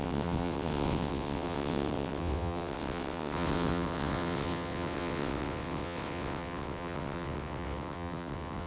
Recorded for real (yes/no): no